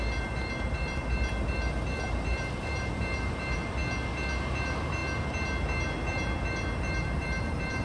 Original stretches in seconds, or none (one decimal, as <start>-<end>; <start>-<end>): 3.8-4.6; 5.0-5.6